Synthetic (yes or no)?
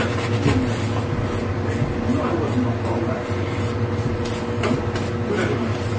no